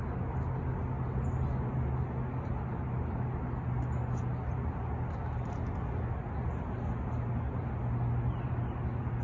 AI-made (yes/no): no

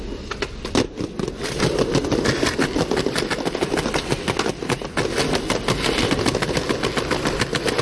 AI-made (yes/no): no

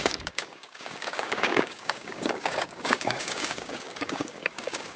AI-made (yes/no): yes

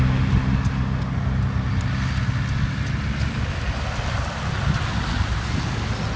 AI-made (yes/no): no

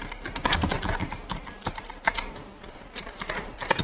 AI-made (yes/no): no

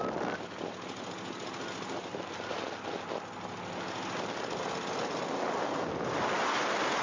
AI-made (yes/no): no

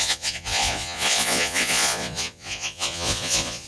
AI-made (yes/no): yes